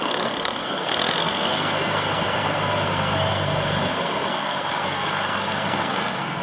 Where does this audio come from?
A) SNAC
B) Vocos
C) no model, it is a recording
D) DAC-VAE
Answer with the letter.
A